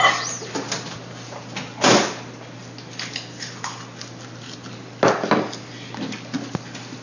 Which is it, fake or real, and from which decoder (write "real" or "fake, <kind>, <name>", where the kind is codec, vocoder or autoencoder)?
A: real